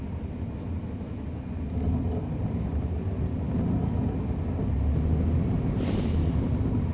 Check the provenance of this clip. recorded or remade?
recorded